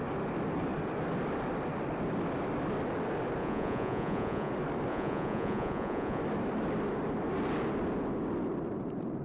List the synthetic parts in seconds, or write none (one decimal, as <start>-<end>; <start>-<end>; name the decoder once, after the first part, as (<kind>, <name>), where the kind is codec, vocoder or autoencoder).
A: 3.4-4.5 (vocoder, Vocos); 4.9-6.2